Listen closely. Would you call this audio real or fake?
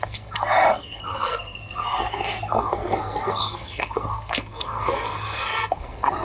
fake